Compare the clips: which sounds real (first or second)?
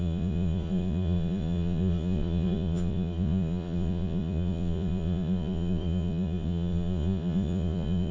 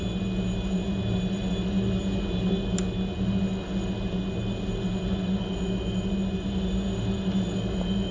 second